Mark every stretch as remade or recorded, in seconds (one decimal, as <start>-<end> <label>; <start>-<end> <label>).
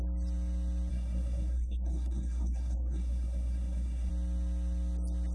0.0-0.9 recorded; 0.9-4.1 remade; 4.1-5.3 recorded